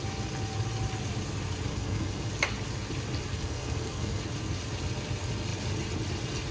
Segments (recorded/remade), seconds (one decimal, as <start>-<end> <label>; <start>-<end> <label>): 0.0-1.7 recorded; 1.7-2.3 remade; 2.3-3.3 recorded; 3.3-4.2 remade; 4.2-6.5 recorded